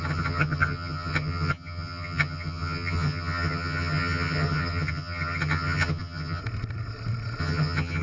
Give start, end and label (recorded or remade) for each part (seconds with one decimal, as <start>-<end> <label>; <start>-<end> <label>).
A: 0.0-6.4 remade; 6.4-7.4 recorded; 7.4-8.0 remade